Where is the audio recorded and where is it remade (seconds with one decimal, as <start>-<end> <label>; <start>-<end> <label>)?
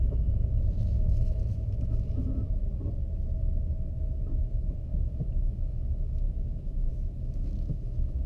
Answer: 0.0-2.6 remade; 2.6-4.0 recorded; 4.0-8.3 remade